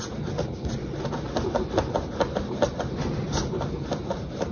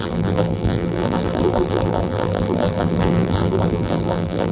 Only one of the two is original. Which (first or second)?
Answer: first